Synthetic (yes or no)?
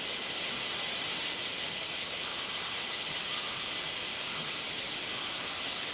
no